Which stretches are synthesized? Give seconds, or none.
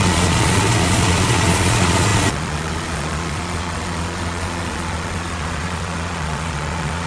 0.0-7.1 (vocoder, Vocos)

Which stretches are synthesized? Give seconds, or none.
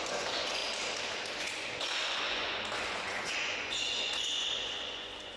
0.0-0.6 (vocoder, Vocos); 1.4-5.4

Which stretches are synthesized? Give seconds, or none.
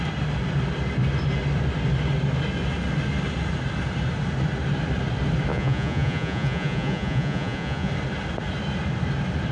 5.5-7.9 (vocoder, Vocos)